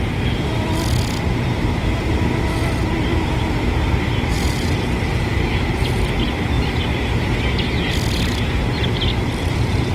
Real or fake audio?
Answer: real